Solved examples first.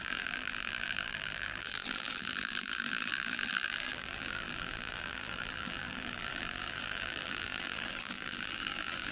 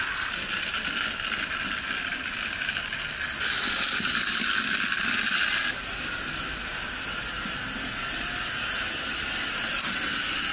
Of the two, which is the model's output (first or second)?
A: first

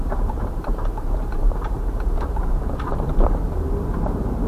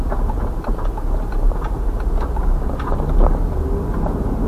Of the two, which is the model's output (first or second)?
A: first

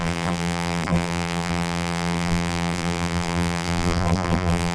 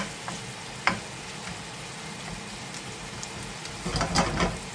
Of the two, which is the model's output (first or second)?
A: first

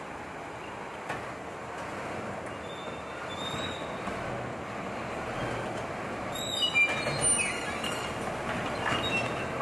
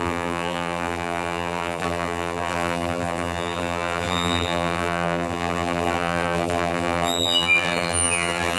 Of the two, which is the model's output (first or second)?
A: second